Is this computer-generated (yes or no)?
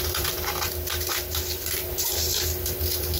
yes